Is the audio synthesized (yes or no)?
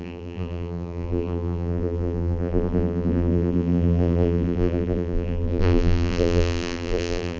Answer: yes